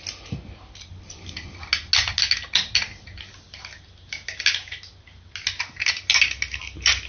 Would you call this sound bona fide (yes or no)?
yes